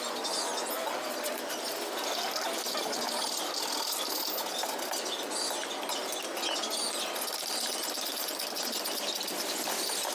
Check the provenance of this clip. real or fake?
real